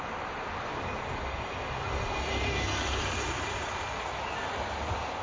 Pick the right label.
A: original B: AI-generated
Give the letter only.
A